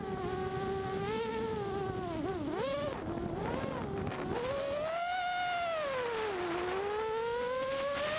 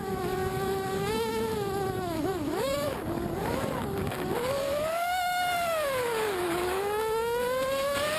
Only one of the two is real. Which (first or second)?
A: first